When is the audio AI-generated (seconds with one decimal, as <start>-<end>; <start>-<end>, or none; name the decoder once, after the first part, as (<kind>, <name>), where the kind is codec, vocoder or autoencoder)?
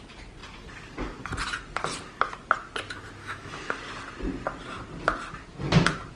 3.2-3.8 (autoencoder, DAC-VAE)